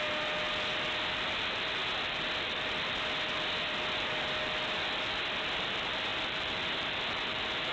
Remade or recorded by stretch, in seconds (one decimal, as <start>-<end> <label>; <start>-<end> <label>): 0.0-7.7 recorded